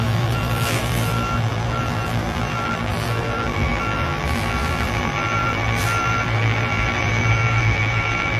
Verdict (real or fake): fake